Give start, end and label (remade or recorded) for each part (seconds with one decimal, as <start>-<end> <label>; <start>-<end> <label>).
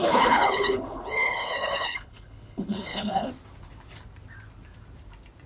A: 0.0-3.3 remade; 3.3-5.5 recorded